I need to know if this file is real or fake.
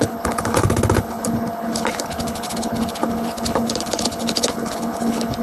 fake